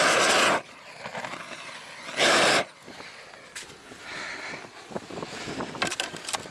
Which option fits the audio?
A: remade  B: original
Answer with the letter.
B